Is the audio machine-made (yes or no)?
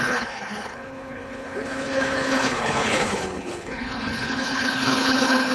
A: yes